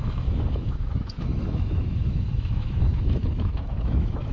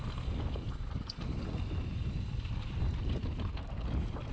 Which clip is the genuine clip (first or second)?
second